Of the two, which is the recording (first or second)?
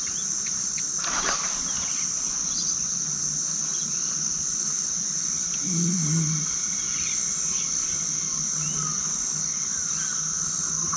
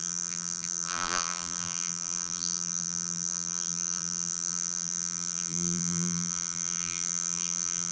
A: first